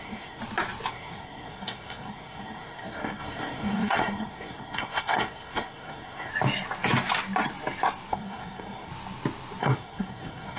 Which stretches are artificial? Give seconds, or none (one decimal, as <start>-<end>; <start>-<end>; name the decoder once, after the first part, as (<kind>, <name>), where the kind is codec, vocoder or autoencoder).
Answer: 0.0-0.4 (codec, SNAC); 0.9-6.3; 8.1-8.9; 9.6-10.6